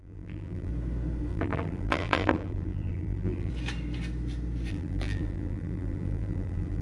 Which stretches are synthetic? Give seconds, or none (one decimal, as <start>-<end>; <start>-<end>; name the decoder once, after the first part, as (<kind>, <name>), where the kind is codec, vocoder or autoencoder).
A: 0.0-0.7 (vocoder, BigVGAN v2); 1.3-3.5; 4.7-6.8